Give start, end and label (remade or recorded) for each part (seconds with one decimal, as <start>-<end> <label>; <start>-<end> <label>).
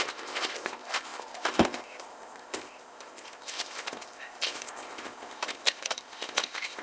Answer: 0.0-6.8 remade